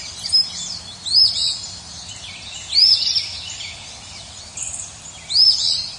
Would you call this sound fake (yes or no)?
no